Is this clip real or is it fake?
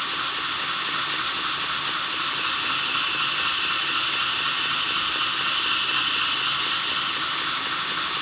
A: real